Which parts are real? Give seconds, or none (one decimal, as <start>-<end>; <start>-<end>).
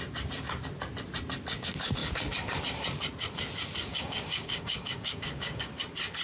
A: 0.0-3.9; 5.8-6.2